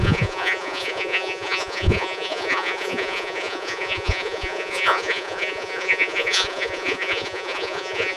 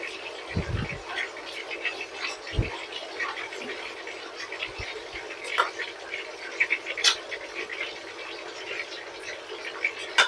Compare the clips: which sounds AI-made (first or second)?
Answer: first